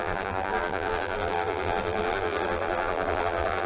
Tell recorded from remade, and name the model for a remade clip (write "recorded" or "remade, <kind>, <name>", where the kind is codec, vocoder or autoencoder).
remade, vocoder, BigVGAN v2